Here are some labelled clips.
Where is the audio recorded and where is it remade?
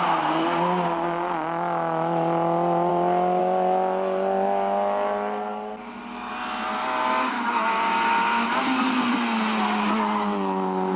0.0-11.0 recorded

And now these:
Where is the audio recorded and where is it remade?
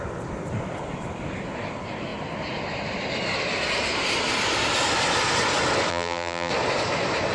0.0-5.9 recorded; 5.9-6.5 remade; 6.5-7.3 recorded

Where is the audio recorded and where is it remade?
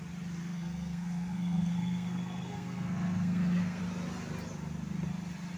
0.0-0.4 recorded; 0.4-3.8 remade; 3.8-5.6 recorded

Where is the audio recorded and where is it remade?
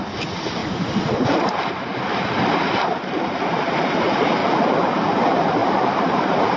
0.0-4.4 remade; 4.4-5.1 recorded; 5.1-6.6 remade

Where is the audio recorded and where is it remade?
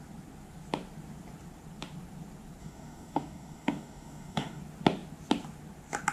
0.0-2.6 recorded; 2.6-4.6 remade; 4.6-6.1 recorded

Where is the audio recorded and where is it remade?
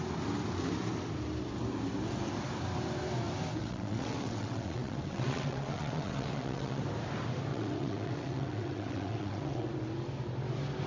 0.0-3.6 recorded; 3.6-6.8 remade; 6.8-7.5 recorded; 7.5-9.7 remade; 9.7-10.9 recorded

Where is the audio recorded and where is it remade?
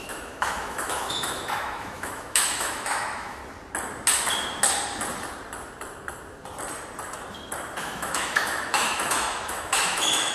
0.0-3.4 remade; 3.4-7.8 recorded; 7.8-10.3 remade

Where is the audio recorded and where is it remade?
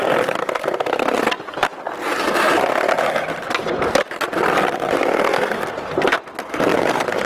0.0-6.7 recorded; 6.7-7.3 remade